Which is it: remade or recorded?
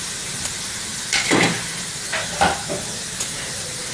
remade